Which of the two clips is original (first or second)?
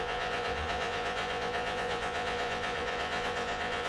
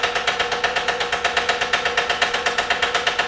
second